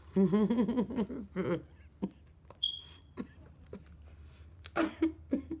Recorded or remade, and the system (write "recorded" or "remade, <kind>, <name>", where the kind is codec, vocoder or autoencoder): recorded